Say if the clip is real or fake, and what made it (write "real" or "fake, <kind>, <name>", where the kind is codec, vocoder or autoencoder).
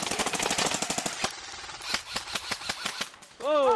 real